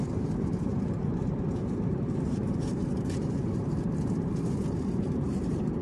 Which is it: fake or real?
fake